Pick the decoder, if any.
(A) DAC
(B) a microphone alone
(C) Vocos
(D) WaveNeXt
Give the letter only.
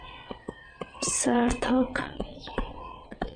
D